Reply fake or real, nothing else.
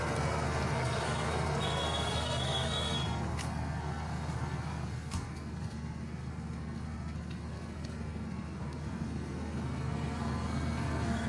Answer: fake